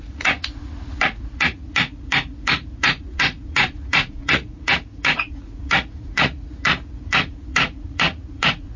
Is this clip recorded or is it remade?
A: remade